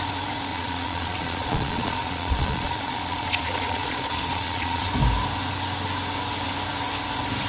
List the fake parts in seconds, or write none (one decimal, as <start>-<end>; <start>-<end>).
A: 0.5-4.9